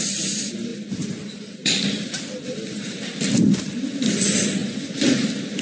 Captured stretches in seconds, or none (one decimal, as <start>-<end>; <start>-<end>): 4.6-5.6